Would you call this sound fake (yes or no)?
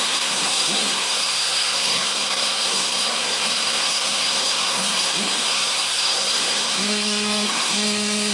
yes